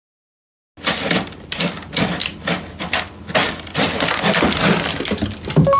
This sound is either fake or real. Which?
real